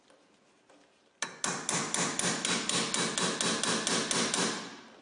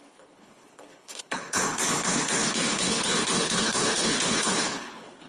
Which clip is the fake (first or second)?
second